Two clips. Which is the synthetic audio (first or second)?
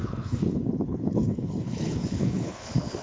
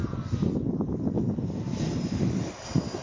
first